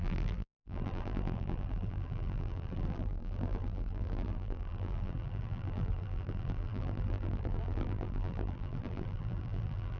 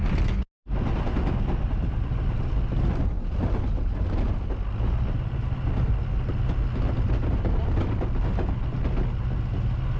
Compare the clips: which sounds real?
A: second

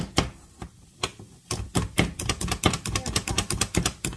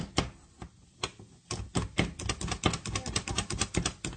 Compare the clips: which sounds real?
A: second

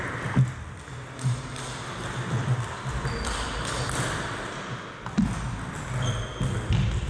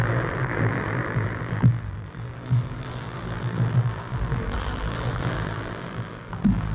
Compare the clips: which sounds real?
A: first